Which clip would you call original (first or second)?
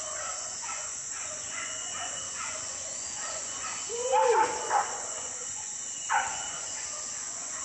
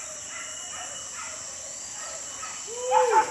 second